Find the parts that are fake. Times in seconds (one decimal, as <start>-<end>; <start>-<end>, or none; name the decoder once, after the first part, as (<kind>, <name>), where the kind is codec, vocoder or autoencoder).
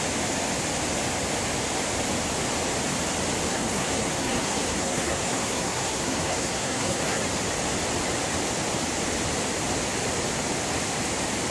3.5-7.2 (codec, SNAC)